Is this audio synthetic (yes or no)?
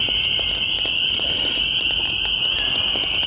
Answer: no